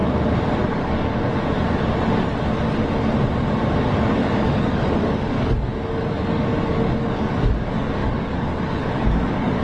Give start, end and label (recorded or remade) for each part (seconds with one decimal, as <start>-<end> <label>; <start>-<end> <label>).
0.0-0.7 recorded; 0.7-1.3 remade; 1.3-4.0 recorded; 4.0-9.6 remade